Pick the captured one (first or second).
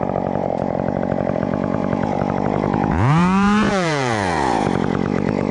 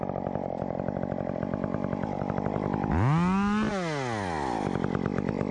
second